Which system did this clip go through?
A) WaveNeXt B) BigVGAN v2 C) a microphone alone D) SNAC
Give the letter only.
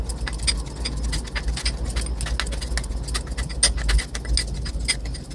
C